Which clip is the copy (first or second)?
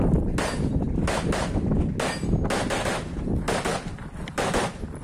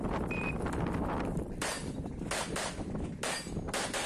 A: second